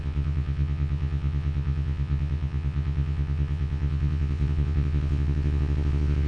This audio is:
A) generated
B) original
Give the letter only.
A